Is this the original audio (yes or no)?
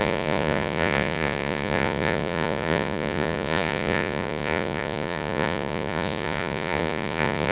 no